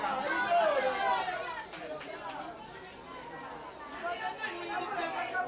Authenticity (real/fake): real